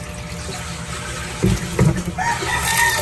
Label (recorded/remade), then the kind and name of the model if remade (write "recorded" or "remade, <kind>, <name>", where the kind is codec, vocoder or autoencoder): recorded